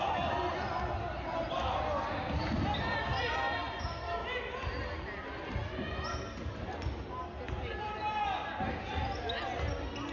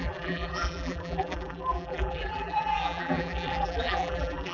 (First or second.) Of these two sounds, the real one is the first